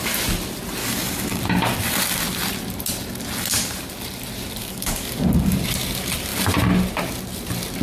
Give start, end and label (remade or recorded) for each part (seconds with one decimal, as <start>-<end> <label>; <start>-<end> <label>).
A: 0.0-0.8 recorded; 0.8-1.4 remade; 1.4-4.6 recorded; 4.6-5.6 remade; 5.6-7.8 recorded